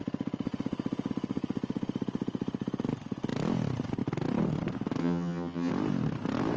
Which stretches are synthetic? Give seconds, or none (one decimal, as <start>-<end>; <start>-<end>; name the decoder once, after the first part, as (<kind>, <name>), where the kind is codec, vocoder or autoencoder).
5.0-5.7 (vocoder, HiFi-GAN)

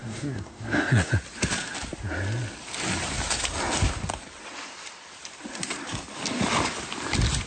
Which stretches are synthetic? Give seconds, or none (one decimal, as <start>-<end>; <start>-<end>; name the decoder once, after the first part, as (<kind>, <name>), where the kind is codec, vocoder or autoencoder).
0.0-1.1 (codec, SNAC)

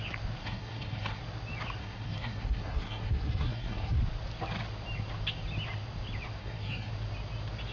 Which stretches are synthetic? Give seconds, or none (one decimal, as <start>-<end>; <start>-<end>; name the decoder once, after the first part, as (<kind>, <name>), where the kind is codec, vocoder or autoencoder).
0.4-1.2 (codec, SNAC); 1.8-4.0; 6.4-6.9